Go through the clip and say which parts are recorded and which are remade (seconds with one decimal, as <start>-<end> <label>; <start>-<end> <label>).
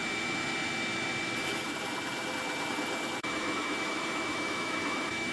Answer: 0.0-3.2 recorded; 3.2-5.3 remade